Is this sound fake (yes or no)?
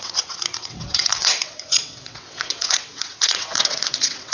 yes